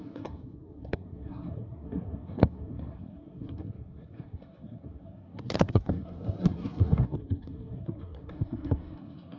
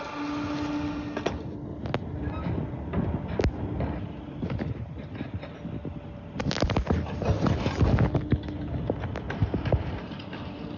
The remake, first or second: first